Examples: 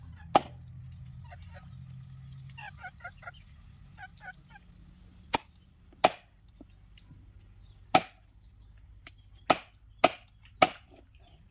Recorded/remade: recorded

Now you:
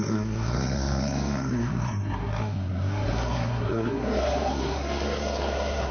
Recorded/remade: remade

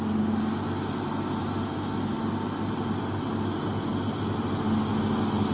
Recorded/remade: recorded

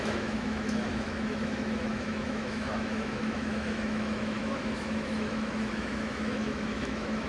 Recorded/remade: remade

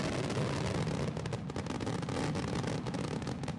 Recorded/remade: recorded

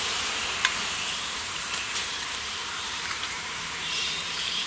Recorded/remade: remade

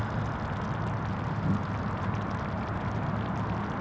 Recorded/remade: recorded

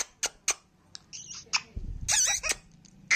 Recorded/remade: recorded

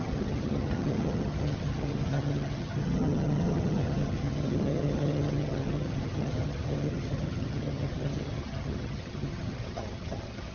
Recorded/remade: remade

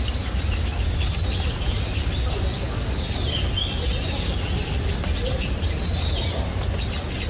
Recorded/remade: recorded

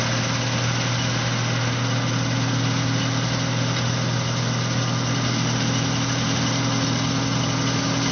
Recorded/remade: recorded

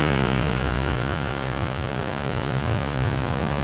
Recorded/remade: remade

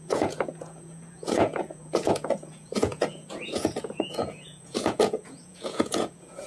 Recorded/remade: remade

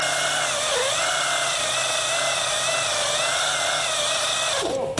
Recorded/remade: recorded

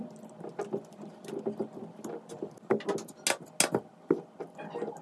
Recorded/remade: recorded